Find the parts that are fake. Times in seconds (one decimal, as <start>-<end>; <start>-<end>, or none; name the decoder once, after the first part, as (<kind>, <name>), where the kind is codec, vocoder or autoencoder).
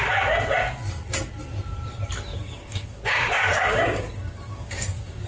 2.3-5.3 (codec, DAC)